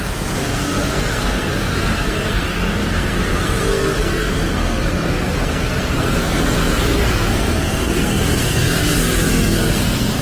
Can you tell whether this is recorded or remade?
remade